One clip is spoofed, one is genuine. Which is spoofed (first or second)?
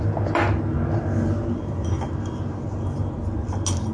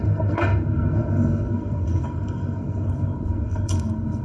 second